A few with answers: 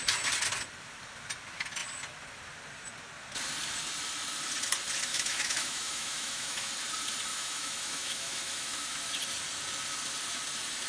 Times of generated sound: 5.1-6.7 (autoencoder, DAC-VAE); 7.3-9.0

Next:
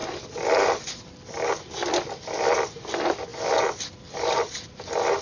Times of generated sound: none

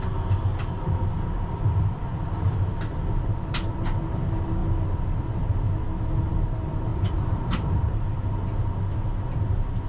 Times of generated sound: 6.9-7.8 (vocoder, BigVGAN v2)

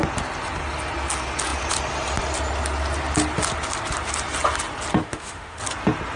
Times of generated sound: 5.0-5.6 (autoencoder, DAC-VAE)